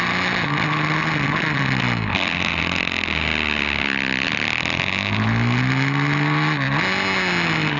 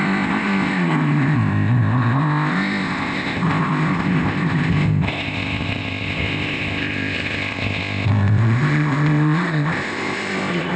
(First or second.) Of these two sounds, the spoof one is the second